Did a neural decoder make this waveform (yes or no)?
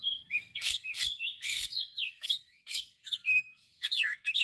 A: yes